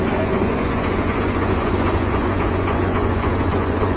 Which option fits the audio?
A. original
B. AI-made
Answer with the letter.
B